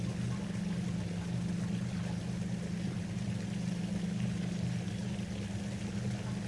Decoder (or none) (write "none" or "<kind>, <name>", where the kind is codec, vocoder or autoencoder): none